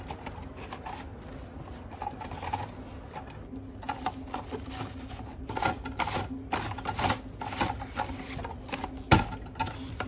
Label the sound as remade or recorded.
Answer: recorded